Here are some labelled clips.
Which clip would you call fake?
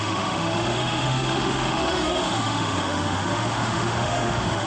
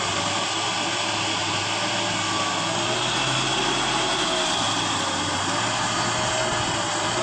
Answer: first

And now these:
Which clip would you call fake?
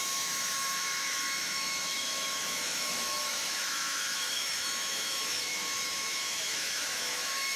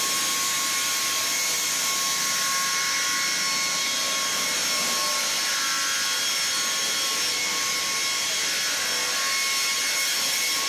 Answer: first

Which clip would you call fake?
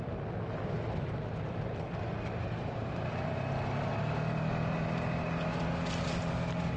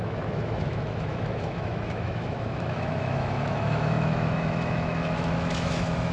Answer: second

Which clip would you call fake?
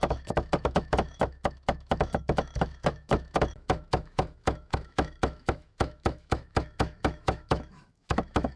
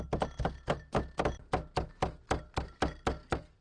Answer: first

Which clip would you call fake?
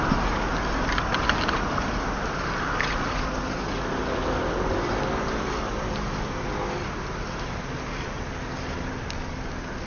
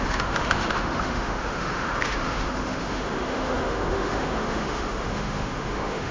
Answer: second